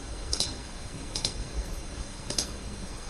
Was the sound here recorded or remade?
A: remade